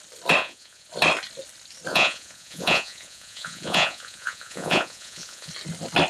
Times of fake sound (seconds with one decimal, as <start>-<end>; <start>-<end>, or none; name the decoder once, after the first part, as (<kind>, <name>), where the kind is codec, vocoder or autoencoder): 0.4-0.9 (vocoder, Vocos); 1.9-5.5